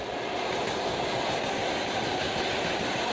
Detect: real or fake real